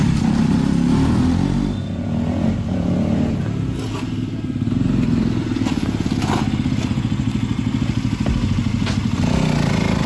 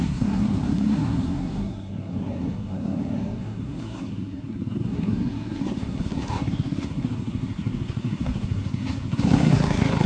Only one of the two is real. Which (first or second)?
first